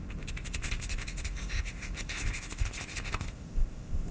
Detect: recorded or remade remade